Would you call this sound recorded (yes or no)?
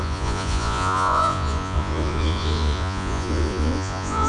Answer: no